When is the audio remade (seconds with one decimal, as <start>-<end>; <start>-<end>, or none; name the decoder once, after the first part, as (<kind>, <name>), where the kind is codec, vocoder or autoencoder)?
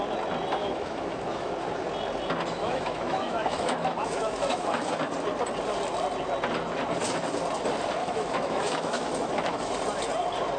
0.6-1.5 (autoencoder, DAC-VAE); 2.6-5.0; 8.0-9.7